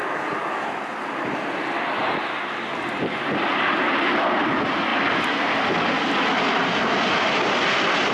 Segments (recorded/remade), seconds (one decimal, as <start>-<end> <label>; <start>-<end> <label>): 0.0-8.1 recorded

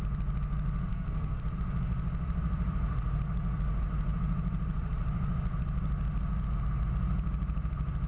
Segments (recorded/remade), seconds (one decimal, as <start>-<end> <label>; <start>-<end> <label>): 0.0-0.9 recorded; 0.9-1.4 remade; 1.4-8.1 recorded

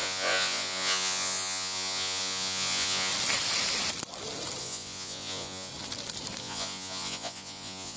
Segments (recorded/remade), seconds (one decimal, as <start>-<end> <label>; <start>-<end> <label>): 0.0-3.1 remade; 3.1-4.6 recorded; 4.6-5.7 remade; 5.7-6.4 recorded; 6.4-8.0 remade

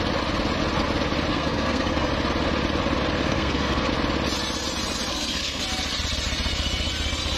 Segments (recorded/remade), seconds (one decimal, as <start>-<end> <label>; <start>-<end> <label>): 0.0-1.3 recorded; 1.3-2.1 remade; 2.1-3.3 recorded; 3.3-3.9 remade; 3.9-5.1 recorded; 5.1-5.6 remade; 5.6-7.4 recorded

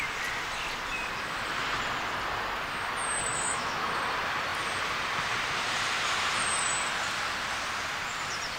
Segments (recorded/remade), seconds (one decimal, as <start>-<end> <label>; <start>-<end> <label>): 0.0-3.3 recorded; 3.3-3.9 remade; 3.9-8.6 recorded

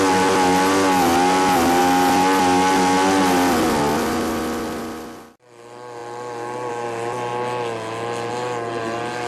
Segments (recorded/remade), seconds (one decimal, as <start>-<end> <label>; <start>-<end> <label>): 0.0-9.3 recorded

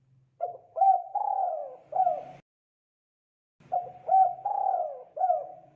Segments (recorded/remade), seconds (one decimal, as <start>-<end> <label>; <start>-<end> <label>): 0.0-1.6 remade; 1.6-5.1 recorded; 5.1-5.8 remade

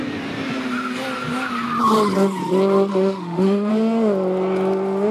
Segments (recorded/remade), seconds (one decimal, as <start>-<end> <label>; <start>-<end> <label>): 0.0-2.9 recorded; 2.9-3.7 remade; 3.7-5.1 recorded